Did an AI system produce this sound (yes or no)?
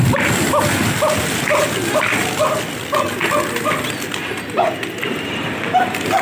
no